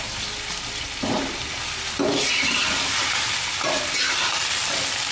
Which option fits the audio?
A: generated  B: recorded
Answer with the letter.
B